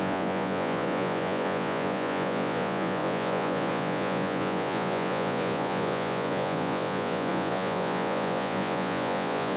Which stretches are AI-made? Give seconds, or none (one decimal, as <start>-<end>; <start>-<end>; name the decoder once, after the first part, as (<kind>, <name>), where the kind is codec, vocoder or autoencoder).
0.0-9.6 (vocoder, Vocos)